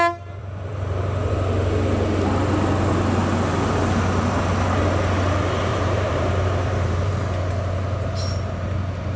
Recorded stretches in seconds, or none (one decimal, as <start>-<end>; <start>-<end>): 0.0-0.4; 1.3-5.7; 7.1-9.2